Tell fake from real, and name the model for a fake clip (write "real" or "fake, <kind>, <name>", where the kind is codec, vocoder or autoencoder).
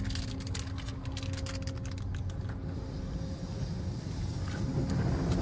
real